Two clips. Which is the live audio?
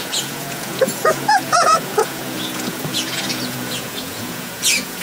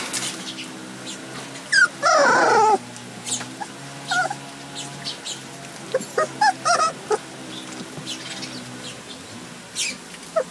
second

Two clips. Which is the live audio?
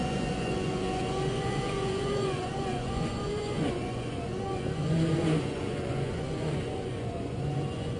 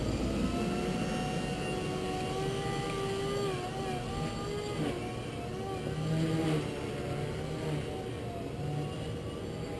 second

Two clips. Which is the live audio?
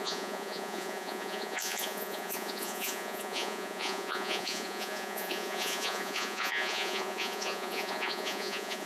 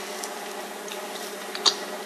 second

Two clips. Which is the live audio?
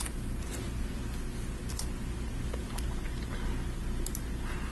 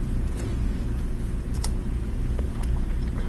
first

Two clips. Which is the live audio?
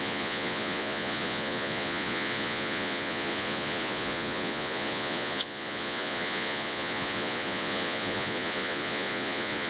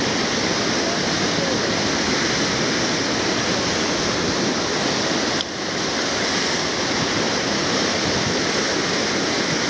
second